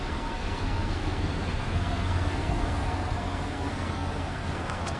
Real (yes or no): no